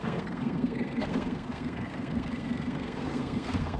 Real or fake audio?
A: fake